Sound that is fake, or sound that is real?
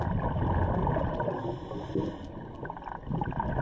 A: real